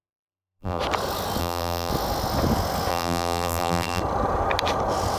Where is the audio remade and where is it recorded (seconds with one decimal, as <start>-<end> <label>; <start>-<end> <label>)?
0.0-0.8 remade; 0.8-1.4 recorded; 1.4-1.9 remade; 1.9-2.9 recorded; 2.9-4.0 remade; 4.0-5.2 recorded